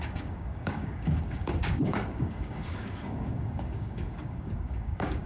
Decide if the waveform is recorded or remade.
remade